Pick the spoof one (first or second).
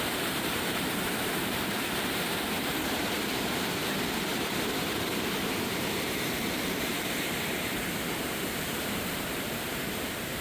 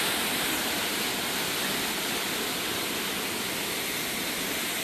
first